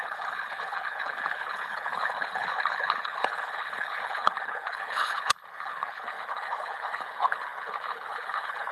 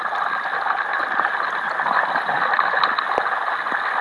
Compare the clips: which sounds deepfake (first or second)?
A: first